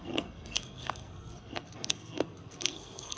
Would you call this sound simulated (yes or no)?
yes